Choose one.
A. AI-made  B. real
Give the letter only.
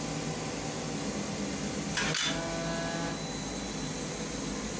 B